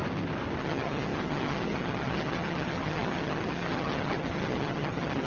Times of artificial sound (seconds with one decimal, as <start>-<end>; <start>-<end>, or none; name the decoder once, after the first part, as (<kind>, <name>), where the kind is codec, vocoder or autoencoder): 0.6-5.3 (vocoder, HiFi-GAN)